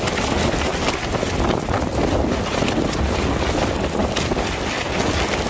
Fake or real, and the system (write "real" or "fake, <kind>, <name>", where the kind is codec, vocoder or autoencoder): real